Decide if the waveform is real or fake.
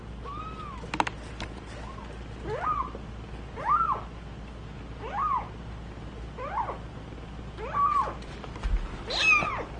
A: real